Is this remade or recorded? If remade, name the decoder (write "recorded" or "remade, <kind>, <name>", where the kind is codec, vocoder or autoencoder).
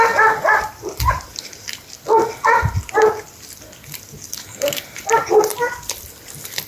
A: recorded